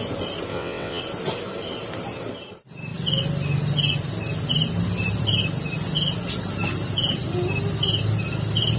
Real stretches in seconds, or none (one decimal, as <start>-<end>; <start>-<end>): 0.0-0.5; 1.0-8.8